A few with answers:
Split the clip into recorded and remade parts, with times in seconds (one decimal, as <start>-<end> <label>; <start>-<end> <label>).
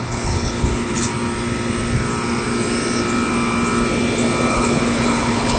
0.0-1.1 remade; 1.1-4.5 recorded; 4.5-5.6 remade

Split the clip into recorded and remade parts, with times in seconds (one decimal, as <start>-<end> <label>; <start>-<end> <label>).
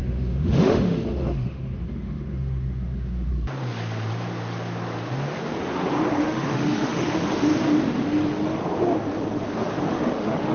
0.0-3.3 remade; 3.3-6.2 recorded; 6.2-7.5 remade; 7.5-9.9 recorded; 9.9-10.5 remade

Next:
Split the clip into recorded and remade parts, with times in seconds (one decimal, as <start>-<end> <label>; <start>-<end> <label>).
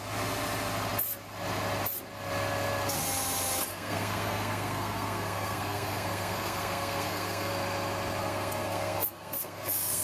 0.0-3.7 recorded; 3.7-7.5 remade; 7.5-8.2 recorded; 8.2-10.0 remade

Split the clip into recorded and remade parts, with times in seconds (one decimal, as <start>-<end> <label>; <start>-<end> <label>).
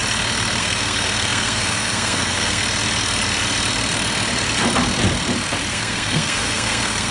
0.0-0.6 recorded; 0.6-2.6 remade; 2.6-5.7 recorded; 5.7-7.1 remade